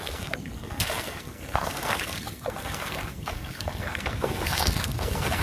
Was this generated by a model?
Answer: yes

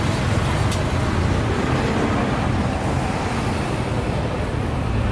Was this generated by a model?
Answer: no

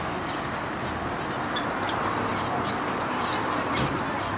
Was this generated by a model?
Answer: no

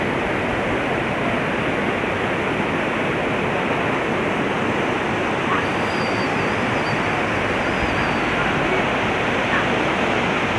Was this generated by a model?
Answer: no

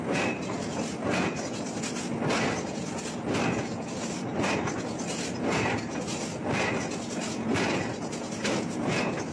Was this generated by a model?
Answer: no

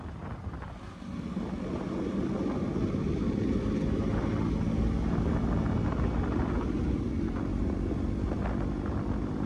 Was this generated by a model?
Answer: no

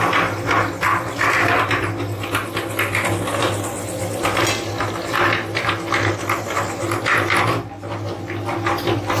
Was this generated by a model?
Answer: no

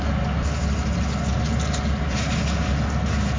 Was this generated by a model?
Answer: no